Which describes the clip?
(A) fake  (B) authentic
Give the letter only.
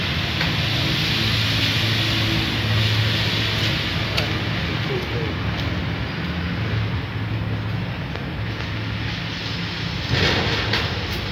B